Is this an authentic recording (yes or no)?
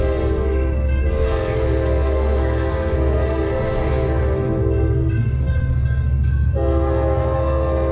no